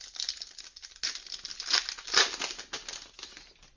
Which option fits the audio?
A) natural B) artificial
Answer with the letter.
A